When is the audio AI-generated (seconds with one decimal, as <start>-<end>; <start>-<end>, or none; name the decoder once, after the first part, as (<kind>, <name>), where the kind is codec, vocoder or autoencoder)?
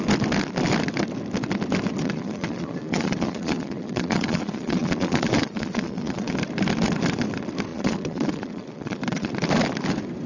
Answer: 2.0-6.3 (vocoder, Vocos); 7.7-9.3